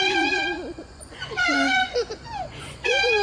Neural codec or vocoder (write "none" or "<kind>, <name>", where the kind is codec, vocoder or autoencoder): vocoder, Vocos